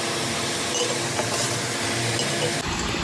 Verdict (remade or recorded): recorded